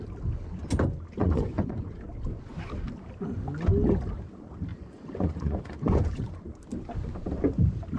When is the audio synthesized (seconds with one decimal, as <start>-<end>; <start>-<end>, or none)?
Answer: 1.2-2.0; 4.7-6.4